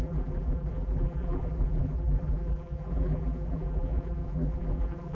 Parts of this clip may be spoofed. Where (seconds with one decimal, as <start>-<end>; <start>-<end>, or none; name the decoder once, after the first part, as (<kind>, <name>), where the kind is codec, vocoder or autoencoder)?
0.0-5.1 (vocoder, BigVGAN v2)